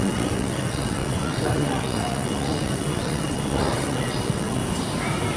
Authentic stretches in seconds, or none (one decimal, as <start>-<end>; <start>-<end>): 4.6-5.4